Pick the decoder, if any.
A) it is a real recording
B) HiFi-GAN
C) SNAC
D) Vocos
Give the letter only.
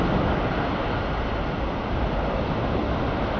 A